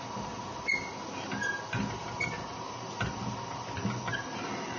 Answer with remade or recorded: recorded